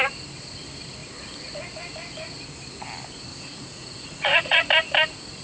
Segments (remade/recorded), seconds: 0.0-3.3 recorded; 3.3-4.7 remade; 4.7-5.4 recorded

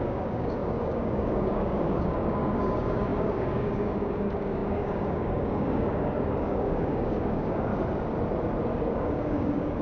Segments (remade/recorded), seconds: 0.0-7.7 remade; 7.7-8.9 recorded; 8.9-9.8 remade